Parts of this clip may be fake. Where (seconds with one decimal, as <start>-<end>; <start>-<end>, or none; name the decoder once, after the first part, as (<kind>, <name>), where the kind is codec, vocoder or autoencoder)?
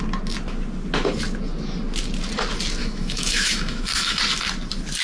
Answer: 2.8-4.2 (autoencoder, DAC-VAE)